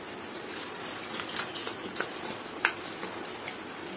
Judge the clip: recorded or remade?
recorded